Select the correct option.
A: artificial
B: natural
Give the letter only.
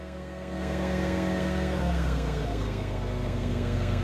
A